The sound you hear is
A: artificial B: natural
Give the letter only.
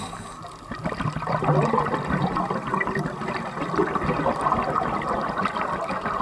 B